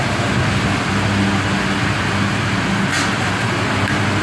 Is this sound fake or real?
real